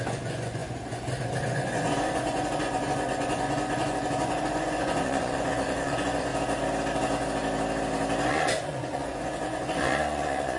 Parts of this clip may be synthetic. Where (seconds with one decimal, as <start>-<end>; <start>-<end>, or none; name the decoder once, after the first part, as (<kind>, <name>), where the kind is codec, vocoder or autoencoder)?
0.0-6.3 (vocoder, Vocos); 8.3-10.6